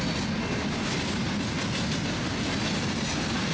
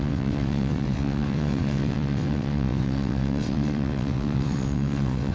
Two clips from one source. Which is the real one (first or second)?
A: first